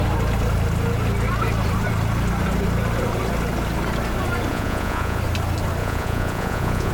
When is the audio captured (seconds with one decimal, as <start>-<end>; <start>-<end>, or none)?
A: 0.0-4.5; 5.2-5.8